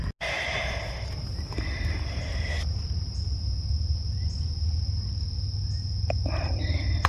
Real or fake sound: real